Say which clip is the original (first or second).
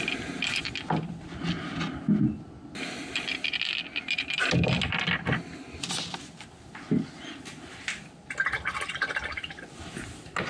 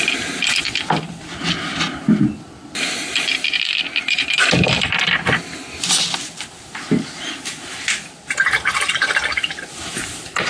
first